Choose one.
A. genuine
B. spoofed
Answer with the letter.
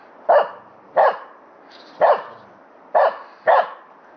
A